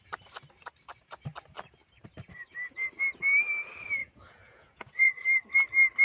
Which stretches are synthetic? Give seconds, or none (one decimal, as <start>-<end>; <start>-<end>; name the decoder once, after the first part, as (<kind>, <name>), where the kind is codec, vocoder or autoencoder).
4.0-5.1 (vocoder, Vocos)